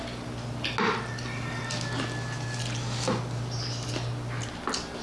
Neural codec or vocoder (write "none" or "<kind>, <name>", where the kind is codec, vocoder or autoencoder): none